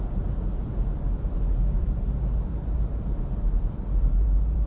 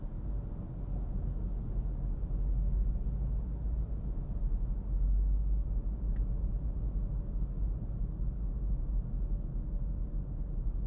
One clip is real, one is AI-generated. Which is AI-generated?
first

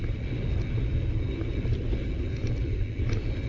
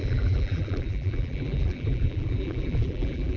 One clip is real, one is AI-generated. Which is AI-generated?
second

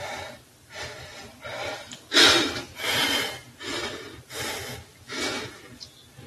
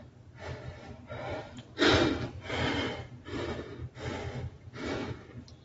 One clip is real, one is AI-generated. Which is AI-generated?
first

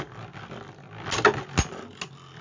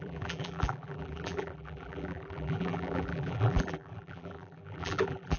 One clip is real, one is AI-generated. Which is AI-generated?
second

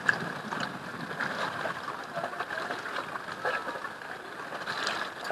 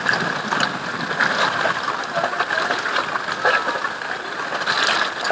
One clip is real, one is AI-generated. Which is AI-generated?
first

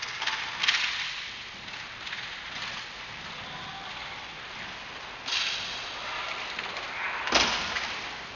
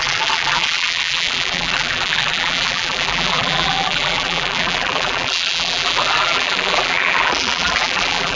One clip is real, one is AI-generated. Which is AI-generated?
second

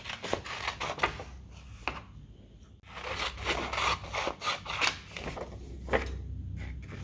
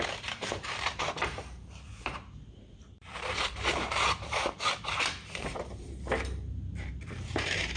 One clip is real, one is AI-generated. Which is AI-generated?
second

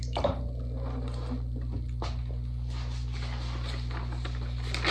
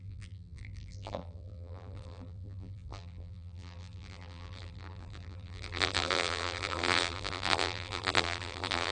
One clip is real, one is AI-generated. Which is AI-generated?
second